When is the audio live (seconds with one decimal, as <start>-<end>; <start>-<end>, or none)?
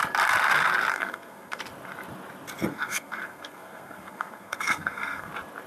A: 0.0-0.9; 1.6-2.7; 5.3-5.7